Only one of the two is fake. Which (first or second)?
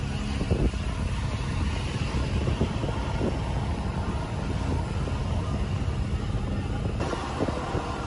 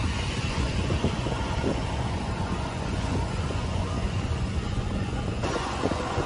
second